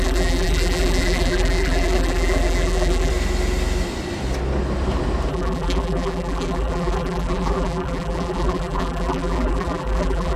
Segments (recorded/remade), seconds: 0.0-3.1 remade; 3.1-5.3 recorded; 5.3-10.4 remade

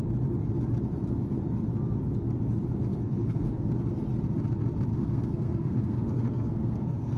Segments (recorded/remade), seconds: 0.0-2.9 recorded; 2.9-3.7 remade; 3.7-4.9 recorded; 4.9-7.2 remade

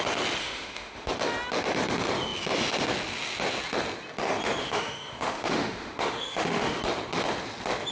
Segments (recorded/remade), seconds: 0.0-0.4 recorded; 0.4-1.1 remade; 1.1-4.6 recorded; 4.6-6.8 remade; 6.8-7.9 recorded

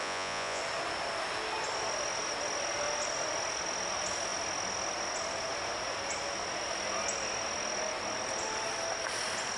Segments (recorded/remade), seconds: 0.0-0.6 remade; 0.6-9.6 recorded

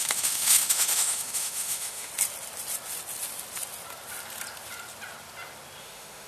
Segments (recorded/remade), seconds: 0.0-2.1 remade; 2.1-5.8 recorded; 5.8-6.3 remade